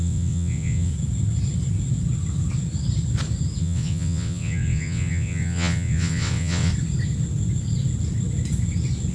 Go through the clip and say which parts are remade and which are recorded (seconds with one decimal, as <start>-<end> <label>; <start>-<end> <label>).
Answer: 0.0-0.9 remade; 0.9-3.6 recorded; 3.6-6.7 remade; 6.7-9.1 recorded